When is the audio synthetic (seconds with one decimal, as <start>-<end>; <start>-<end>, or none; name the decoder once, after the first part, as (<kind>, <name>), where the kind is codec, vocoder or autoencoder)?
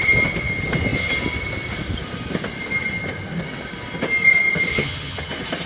4.7-5.3 (vocoder, HiFi-GAN)